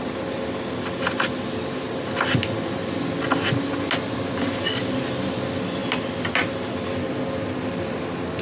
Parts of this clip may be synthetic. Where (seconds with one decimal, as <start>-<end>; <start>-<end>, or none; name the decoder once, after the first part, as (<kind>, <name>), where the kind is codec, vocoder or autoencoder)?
none